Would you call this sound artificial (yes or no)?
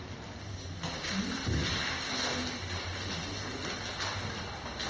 no